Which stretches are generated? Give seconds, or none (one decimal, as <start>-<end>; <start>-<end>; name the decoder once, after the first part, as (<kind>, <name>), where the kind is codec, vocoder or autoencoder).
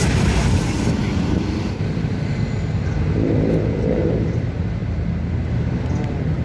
0.0-4.8 (vocoder, BigVGAN v2); 5.5-6.4